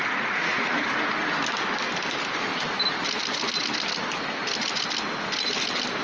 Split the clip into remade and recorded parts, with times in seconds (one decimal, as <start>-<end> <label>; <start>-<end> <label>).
0.0-0.8 remade; 0.8-6.0 recorded